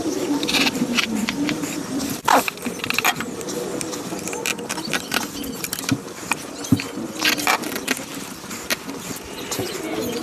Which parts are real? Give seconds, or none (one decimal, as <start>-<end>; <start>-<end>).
6.6-7.2; 8.1-9.1